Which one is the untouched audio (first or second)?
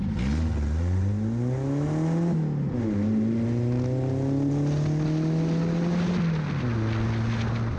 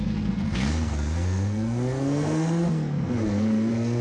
first